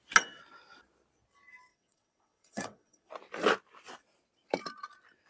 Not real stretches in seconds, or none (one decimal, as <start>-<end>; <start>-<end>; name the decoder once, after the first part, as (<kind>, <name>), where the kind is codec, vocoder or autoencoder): 1.7-3.1 (vocoder, WaveNeXt)